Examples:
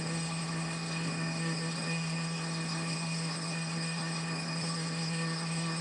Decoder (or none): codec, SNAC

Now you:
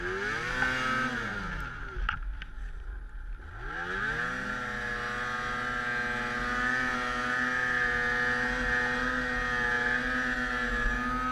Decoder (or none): none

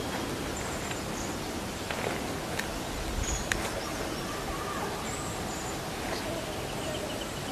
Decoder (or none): none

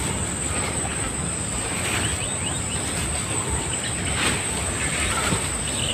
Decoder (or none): none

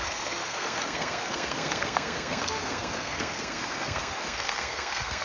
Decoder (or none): codec, SNAC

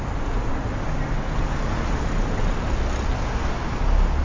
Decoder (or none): none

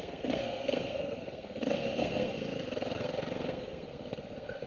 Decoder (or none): codec, SNAC